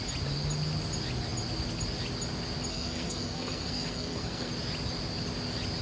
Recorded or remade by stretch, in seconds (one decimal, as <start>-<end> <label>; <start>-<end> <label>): 0.0-2.7 recorded; 2.7-4.5 remade; 4.5-5.8 recorded